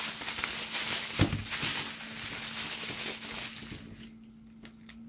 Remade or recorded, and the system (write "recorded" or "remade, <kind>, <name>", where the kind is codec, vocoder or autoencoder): recorded